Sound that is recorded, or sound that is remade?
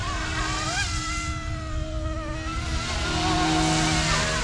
recorded